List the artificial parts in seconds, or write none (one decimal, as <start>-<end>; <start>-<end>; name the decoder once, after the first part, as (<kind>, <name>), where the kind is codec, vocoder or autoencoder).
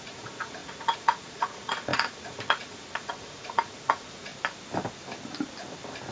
0.0-4.3 (vocoder, Vocos)